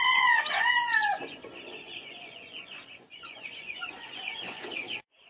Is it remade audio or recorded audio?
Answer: remade